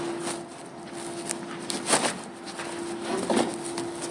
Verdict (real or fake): real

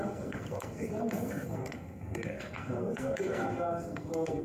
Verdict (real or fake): fake